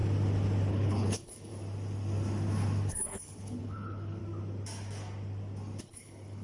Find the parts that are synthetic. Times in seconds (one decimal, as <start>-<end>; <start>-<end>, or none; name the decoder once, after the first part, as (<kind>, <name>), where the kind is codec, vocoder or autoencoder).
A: 0.7-1.5 (codec, HILCodec); 2.9-4.2; 5.8-6.4